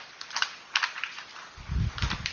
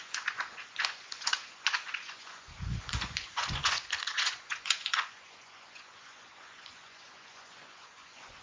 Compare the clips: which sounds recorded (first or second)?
first